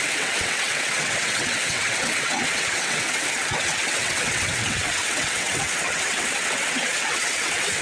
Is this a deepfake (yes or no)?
yes